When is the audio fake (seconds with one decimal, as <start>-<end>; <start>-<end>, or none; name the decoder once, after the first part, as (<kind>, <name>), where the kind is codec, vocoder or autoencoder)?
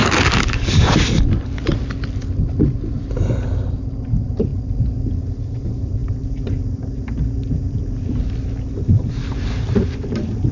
0.0-0.9 (codec, DAC)